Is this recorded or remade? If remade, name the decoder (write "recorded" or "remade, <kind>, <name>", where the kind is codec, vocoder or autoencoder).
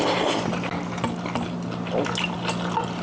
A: recorded